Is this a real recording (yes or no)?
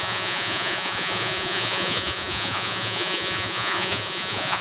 no